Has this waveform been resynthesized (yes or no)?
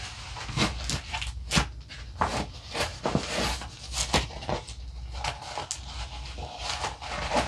no